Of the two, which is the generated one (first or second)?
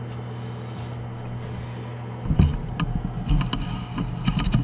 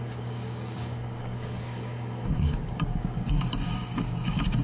second